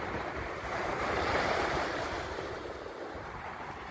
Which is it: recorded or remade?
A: remade